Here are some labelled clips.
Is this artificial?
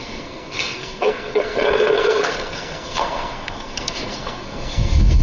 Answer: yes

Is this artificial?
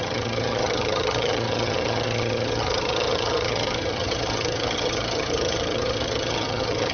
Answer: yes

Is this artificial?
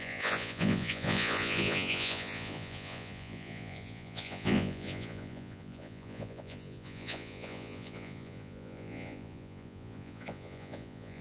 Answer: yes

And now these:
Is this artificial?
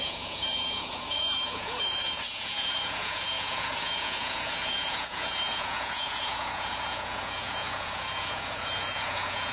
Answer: yes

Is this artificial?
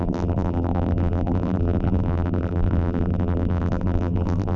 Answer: yes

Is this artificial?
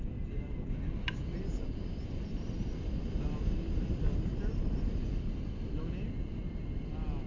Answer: no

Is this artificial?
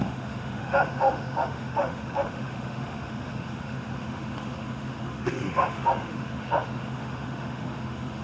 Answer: yes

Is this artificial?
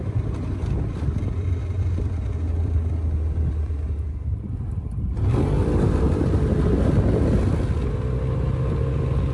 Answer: no